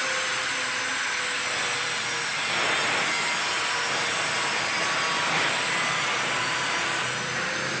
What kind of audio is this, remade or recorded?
recorded